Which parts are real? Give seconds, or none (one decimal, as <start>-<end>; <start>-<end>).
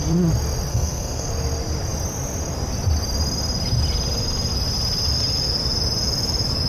0.0-0.7; 1.3-6.7